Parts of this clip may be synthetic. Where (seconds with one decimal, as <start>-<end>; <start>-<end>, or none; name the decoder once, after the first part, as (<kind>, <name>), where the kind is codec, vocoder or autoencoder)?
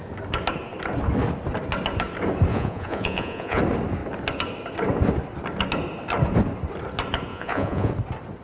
2.5-3.6 (vocoder, Vocos); 7.3-7.9